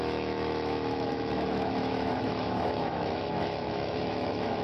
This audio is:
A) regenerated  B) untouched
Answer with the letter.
A